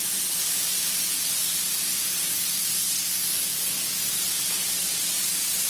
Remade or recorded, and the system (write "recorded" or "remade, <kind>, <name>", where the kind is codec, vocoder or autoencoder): remade, vocoder, BigVGAN v2